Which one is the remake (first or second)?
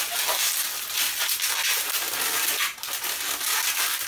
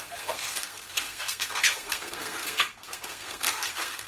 second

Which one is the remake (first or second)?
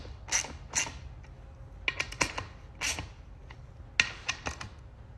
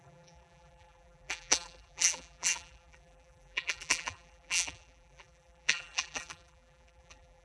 second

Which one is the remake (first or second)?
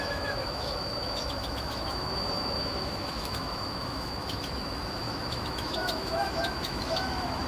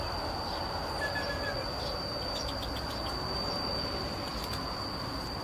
first